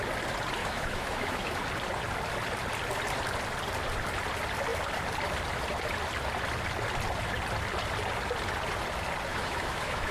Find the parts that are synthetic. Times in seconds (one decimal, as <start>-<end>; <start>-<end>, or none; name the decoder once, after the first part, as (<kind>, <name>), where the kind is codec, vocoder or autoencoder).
0.6-1.6 (autoencoder, DAC-VAE); 9.3-10.1